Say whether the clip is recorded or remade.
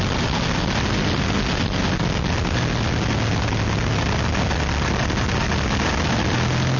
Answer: recorded